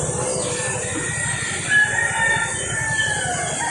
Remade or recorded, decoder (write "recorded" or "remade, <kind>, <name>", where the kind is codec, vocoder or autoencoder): recorded